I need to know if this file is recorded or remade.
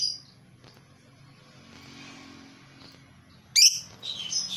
recorded